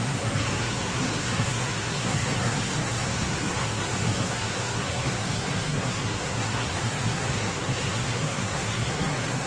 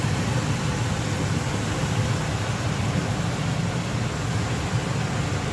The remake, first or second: first